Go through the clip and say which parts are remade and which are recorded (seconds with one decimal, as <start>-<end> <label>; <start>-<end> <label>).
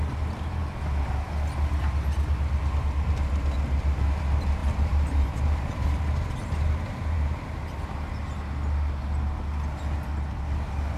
0.0-4.6 recorded; 4.6-7.8 remade; 7.8-11.0 recorded